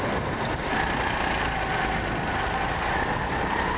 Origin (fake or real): real